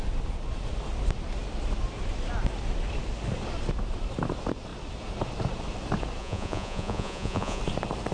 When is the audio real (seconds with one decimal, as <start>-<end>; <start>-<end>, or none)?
0.0-6.2; 7.6-8.1

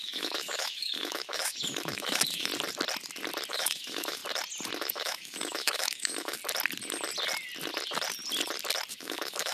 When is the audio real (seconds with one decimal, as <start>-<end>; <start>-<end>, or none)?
2.5-3.5; 4.2-4.8; 6.4-8.9

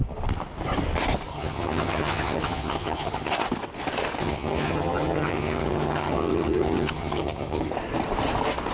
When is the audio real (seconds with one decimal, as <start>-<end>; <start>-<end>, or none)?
0.0-1.3; 3.3-4.2; 7.7-8.7